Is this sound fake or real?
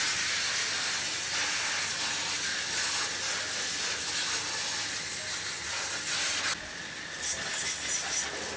real